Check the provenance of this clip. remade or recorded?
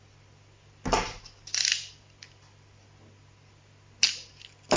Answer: recorded